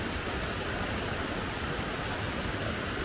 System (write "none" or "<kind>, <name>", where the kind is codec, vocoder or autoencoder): none